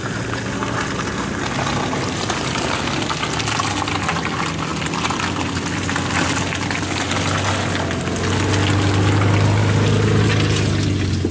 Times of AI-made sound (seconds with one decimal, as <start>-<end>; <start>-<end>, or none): none